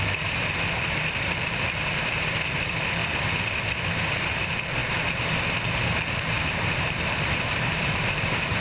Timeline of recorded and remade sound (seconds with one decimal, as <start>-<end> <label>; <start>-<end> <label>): 0.0-3.0 remade; 3.0-4.1 recorded; 4.1-4.8 remade; 4.8-5.9 recorded; 5.9-8.6 remade